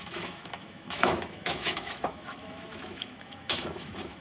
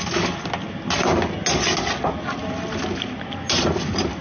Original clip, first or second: second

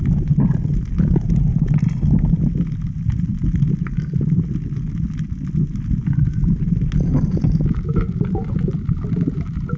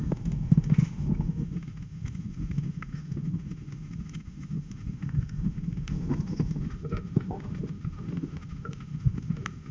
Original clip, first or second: first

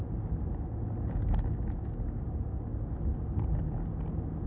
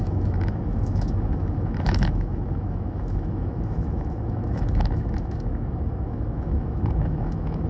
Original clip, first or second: first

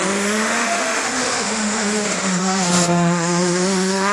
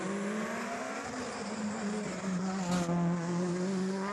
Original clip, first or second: second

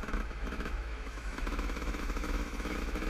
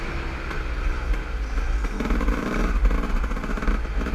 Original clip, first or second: second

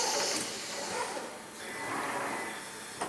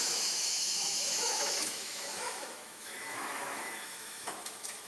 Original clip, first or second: first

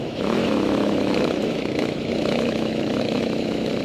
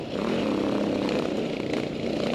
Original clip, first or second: second